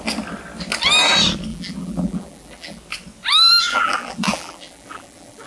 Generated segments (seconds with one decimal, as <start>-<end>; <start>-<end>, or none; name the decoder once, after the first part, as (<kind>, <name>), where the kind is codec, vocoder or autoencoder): 1.5-2.8 (vocoder, BigVGAN v2); 3.7-5.5